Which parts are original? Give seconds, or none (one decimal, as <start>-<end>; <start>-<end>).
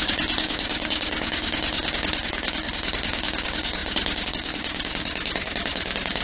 none